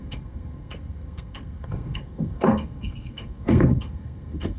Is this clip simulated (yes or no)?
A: yes